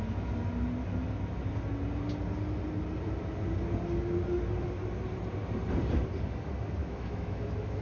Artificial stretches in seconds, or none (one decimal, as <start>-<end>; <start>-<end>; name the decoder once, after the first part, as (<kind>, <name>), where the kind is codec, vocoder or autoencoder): 6.8-7.8 (autoencoder, DAC-VAE)